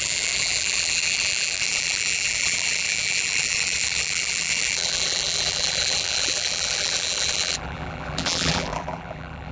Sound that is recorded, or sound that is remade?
remade